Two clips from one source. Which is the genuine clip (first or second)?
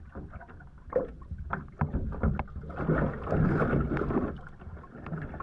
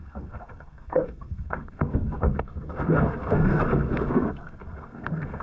first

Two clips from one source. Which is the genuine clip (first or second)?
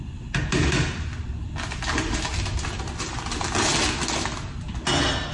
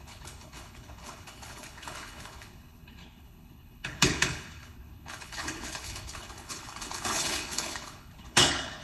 first